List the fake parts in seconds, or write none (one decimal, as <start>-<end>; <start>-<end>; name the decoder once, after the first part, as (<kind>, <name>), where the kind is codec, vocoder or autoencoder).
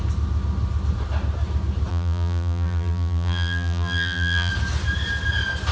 1.9-4.5 (vocoder, BigVGAN v2)